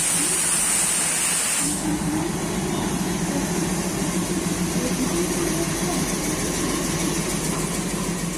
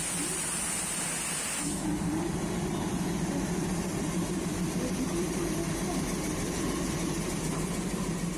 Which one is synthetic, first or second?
second